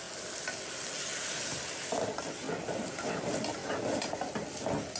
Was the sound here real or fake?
real